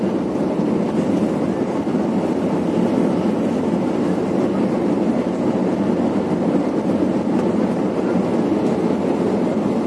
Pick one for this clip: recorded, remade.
recorded